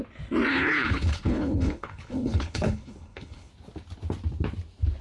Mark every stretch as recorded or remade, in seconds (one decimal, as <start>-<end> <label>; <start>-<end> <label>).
0.0-0.5 recorded; 0.5-3.5 remade; 3.5-5.0 recorded